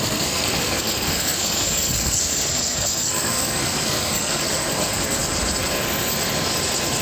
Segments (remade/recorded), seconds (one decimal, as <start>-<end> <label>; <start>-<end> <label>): 0.0-5.2 remade; 5.2-7.0 recorded